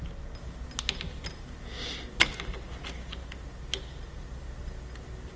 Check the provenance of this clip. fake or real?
real